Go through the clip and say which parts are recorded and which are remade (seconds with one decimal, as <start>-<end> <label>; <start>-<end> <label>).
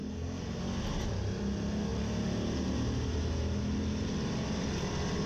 0.0-0.6 remade; 0.6-5.3 recorded